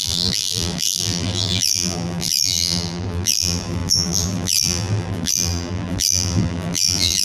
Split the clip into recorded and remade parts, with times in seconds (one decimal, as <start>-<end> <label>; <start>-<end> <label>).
0.0-7.2 remade